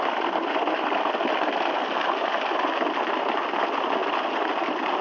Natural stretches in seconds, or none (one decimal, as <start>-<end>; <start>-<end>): 0.0-5.0